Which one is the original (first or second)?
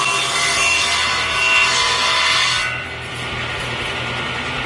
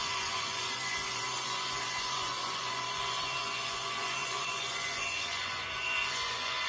first